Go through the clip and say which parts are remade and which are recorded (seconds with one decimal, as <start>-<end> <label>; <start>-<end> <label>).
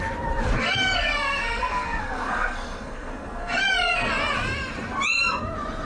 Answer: 0.0-0.6 recorded; 0.6-4.1 remade; 4.1-5.9 recorded